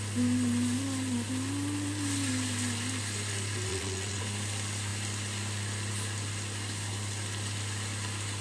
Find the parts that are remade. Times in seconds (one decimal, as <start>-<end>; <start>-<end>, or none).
3.7-4.2